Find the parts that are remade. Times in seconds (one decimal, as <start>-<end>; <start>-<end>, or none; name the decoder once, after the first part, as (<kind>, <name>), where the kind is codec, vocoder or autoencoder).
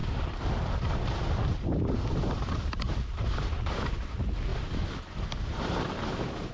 none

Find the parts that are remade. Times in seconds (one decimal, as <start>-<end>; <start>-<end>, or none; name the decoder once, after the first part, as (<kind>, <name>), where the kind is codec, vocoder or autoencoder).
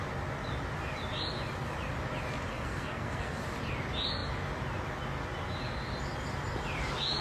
2.5-3.4 (codec, SNAC)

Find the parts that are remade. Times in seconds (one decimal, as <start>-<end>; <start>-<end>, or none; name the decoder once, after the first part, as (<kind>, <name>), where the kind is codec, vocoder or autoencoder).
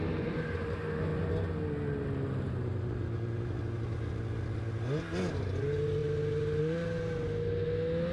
none